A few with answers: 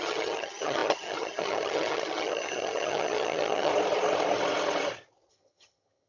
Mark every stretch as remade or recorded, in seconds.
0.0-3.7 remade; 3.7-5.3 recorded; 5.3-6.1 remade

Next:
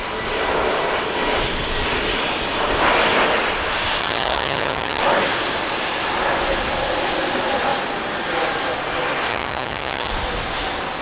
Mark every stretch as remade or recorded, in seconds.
0.0-4.0 recorded; 4.0-5.0 remade; 5.0-9.3 recorded; 9.3-10.1 remade; 10.1-11.0 recorded

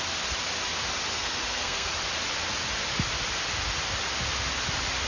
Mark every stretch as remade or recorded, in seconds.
0.0-1.1 recorded; 1.1-1.9 remade; 1.9-5.1 recorded

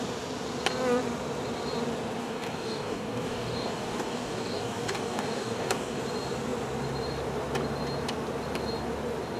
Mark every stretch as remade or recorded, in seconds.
0.0-2.2 recorded; 2.2-6.0 remade; 6.0-9.4 recorded

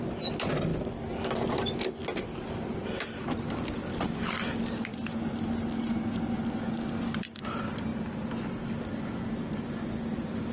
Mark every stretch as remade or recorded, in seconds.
0.0-10.5 recorded